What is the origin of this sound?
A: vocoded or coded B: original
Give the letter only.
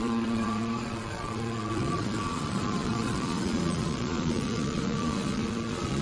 A